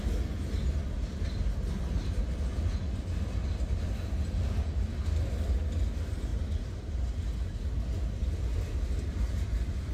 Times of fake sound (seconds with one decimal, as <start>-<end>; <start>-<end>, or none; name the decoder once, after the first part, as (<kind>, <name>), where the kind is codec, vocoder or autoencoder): 6.3-7.0 (vocoder, BigVGAN v2)